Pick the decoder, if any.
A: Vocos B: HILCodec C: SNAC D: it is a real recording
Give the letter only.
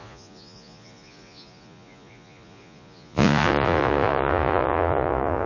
A